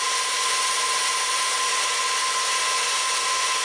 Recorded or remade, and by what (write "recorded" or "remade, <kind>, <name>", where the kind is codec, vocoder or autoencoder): recorded